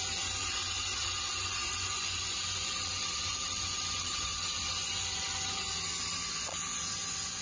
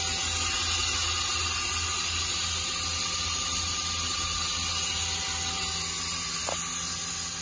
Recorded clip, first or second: second